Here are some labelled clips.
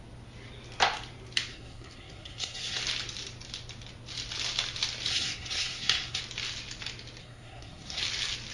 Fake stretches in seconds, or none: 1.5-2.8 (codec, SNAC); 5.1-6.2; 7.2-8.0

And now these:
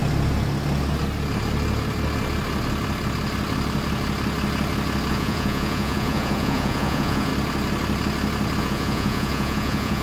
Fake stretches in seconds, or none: 5.1-7.3 (vocoder, Vocos); 8.6-10.0

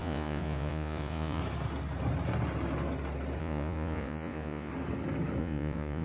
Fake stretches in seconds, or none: 0.0-1.4 (vocoder, Vocos); 3.4-4.7; 5.4-6.0

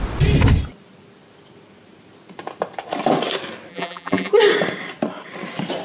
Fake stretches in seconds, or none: 3.7-4.3 (vocoder, BigVGAN v2)

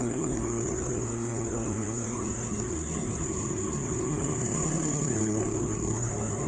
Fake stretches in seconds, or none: 0.0-6.5 (codec, SNAC)

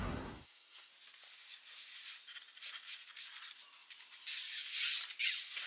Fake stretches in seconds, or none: 0.0-0.9 (codec, SNAC)

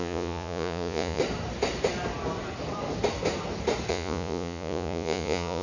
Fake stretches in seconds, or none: 0.0-1.2 (vocoder, Vocos); 3.9-5.6

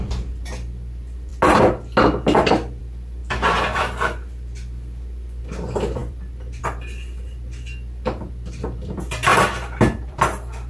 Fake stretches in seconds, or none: 0.0-1.3 (vocoder, BigVGAN v2); 2.8-10.7